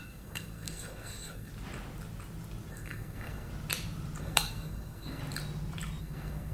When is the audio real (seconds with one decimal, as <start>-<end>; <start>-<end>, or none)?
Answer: 1.5-2.7; 3.5-4.2; 5.2-6.0